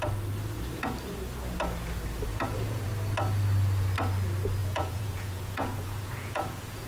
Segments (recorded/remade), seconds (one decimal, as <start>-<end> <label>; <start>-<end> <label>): 0.0-2.3 recorded; 2.3-2.9 remade; 2.9-4.6 recorded; 4.6-6.9 remade